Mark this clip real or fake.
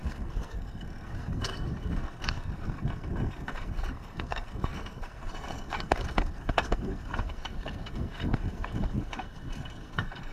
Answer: fake